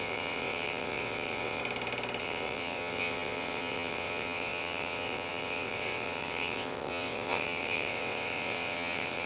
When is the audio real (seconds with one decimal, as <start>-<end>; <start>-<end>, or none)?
1.6-2.2